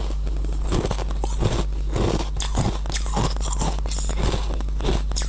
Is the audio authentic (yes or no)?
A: yes